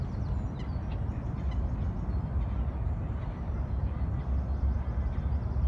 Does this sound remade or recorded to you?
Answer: recorded